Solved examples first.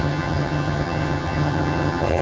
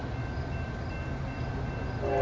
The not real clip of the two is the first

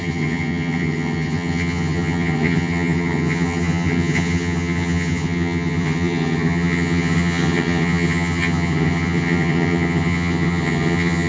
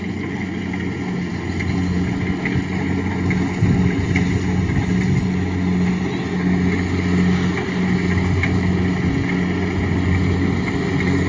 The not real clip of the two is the first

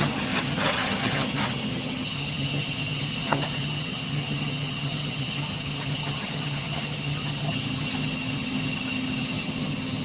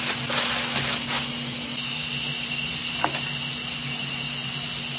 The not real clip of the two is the first